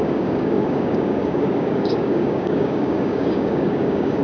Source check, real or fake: fake